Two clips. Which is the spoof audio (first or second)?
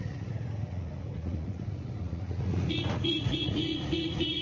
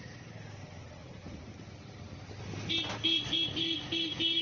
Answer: first